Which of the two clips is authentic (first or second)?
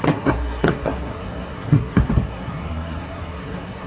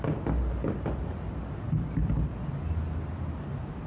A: second